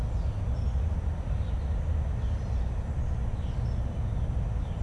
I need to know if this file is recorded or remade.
recorded